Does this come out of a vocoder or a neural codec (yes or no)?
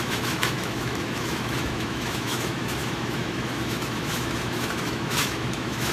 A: yes